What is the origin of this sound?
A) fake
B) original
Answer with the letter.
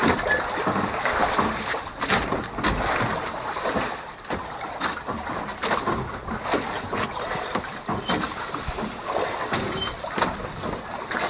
B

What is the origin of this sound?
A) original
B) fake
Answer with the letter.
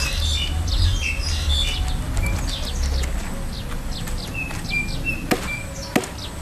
A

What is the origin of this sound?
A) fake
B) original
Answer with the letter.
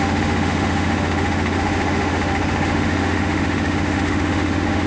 A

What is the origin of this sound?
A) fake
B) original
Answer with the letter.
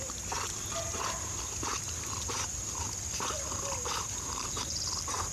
B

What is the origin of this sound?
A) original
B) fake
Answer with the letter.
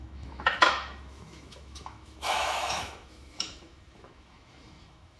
B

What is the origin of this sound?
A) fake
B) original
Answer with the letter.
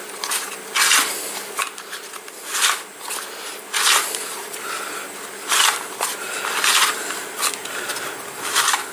B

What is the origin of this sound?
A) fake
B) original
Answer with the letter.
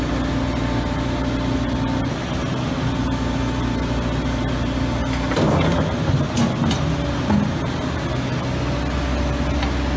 B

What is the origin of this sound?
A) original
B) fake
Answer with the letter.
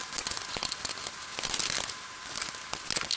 A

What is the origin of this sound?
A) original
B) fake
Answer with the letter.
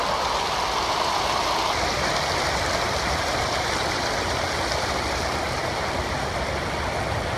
A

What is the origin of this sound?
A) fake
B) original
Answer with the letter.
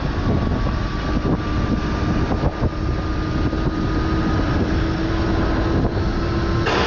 B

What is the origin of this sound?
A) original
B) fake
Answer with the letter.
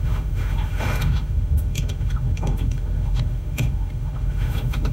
B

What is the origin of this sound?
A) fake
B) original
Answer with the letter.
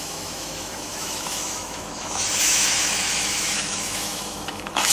A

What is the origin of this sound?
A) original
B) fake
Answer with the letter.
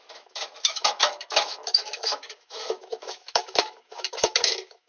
B